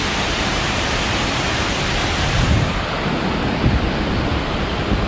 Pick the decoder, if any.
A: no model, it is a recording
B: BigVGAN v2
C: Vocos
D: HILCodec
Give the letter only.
A